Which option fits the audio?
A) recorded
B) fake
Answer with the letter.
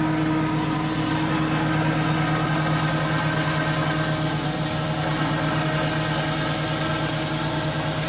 A